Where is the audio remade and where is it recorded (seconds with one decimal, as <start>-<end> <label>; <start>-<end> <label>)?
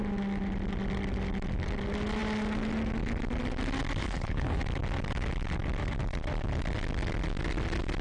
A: 0.0-4.0 recorded; 4.0-4.6 remade; 4.6-8.0 recorded